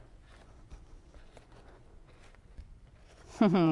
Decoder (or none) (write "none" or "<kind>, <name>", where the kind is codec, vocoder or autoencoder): vocoder, Vocos